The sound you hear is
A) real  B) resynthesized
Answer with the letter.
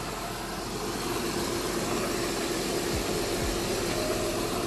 A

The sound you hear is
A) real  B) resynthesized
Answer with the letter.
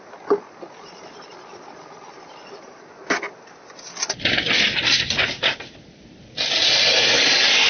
A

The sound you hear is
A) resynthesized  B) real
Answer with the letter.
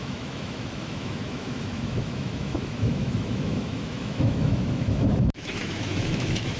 A